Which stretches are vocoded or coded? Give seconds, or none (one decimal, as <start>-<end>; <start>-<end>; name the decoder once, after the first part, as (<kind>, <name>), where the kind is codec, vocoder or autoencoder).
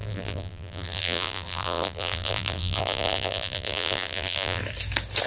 0.0-4.6 (vocoder, BigVGAN v2)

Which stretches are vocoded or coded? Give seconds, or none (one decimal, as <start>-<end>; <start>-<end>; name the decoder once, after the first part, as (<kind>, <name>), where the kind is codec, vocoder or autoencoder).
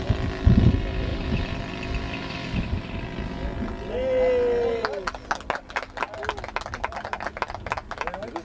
none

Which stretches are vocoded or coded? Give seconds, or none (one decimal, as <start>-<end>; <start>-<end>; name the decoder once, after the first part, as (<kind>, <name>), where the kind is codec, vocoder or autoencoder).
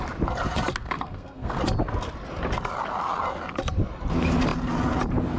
0.8-1.6 (codec, SNAC)